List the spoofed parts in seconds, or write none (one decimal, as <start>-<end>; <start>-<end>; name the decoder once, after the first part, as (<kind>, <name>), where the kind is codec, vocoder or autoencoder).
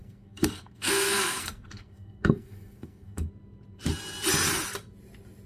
0.0-3.3 (codec, SNAC)